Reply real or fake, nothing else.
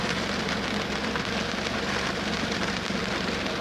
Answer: fake